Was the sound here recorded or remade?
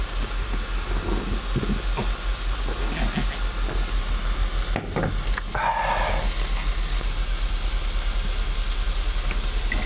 recorded